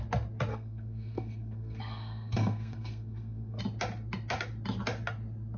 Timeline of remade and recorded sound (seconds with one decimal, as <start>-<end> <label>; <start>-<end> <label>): 0.0-0.5 recorded; 0.5-3.6 remade; 3.6-5.6 recorded